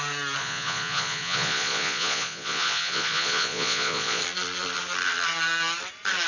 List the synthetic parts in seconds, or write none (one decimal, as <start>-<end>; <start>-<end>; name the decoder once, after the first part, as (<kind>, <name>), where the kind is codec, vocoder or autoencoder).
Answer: 0.4-4.2 (vocoder, Vocos)